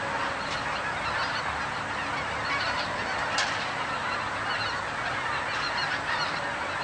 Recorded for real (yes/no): yes